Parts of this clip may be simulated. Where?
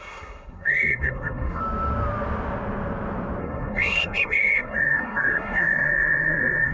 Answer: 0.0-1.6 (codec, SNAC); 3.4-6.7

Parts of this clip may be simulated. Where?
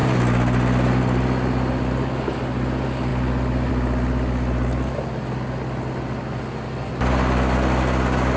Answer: none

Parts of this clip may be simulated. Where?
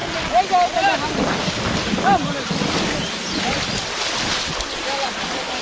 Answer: none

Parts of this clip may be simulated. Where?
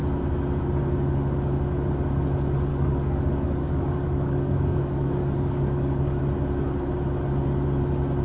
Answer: 2.7-6.2 (codec, DAC)